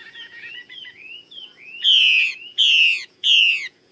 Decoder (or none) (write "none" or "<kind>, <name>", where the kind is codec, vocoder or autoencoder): vocoder, Vocos